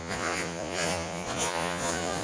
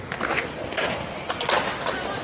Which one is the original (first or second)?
second